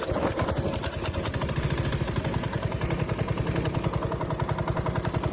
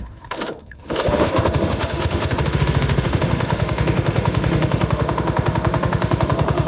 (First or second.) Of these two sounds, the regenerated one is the second